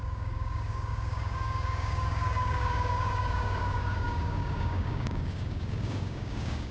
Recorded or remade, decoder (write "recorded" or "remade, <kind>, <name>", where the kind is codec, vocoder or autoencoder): remade, codec, DAC